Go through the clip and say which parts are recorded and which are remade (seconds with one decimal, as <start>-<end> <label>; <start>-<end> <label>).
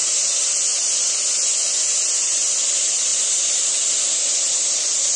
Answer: 0.0-5.2 recorded